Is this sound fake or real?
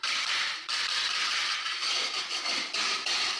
fake